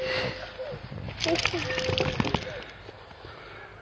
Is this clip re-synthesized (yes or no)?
no